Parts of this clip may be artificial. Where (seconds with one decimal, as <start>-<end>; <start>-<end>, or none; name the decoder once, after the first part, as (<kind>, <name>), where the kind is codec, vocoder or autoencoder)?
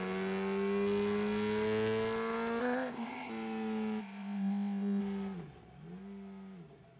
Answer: 2.6-3.3 (codec, ZipCodec); 4.0-5.0